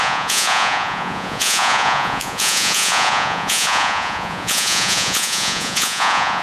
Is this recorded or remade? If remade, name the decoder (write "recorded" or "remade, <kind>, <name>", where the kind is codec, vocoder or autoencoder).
remade, vocoder, Vocos